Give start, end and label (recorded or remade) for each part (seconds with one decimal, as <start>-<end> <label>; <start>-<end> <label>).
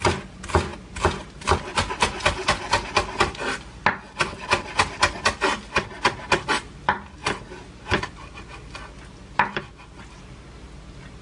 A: 0.0-11.2 recorded